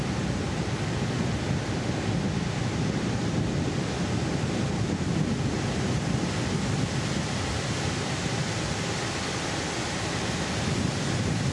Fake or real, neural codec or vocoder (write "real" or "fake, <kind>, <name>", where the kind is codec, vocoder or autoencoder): real